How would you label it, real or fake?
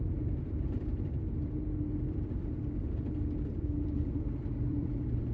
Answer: fake